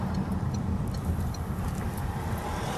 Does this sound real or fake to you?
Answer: fake